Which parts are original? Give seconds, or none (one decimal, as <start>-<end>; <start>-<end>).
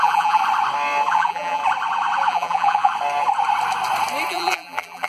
0.4-1.1; 1.6-2.3; 2.9-4.3